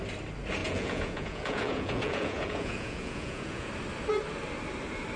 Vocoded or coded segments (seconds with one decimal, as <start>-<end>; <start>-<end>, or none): 0.6-3.7